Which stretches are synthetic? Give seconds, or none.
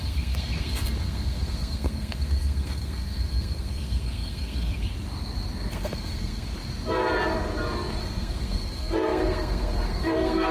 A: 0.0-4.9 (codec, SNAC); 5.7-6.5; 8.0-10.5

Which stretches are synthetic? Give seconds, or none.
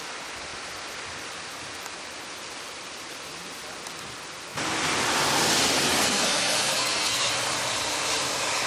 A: 6.0-7.3 (codec, SNAC)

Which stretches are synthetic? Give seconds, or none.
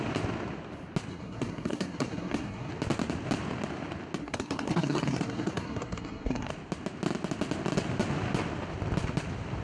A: 1.1-2.7 (codec, SNAC); 4.2-6.5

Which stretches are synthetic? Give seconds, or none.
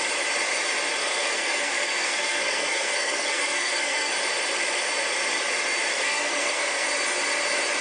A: 1.0-4.1 (codec, SNAC); 5.9-6.9